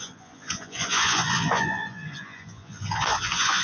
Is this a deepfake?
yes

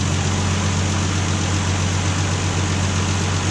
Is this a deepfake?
no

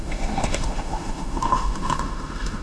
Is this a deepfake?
yes